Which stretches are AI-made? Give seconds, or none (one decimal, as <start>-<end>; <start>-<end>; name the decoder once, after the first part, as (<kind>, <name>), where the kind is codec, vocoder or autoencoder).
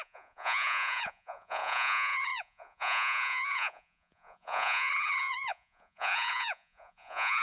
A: 0.0-7.4 (vocoder, Vocos)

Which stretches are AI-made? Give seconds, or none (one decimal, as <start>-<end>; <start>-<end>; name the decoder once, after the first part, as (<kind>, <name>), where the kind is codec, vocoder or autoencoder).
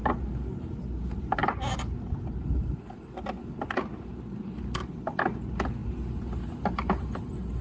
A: none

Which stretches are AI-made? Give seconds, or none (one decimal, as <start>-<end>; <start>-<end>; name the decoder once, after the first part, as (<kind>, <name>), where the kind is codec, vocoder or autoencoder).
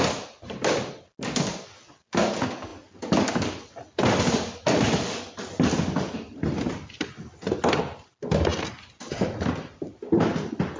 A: none